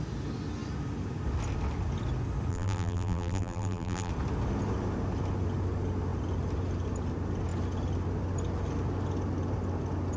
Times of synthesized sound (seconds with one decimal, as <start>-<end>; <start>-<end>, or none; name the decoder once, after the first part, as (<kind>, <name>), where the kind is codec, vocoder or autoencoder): 2.5-4.1 (vocoder, BigVGAN v2)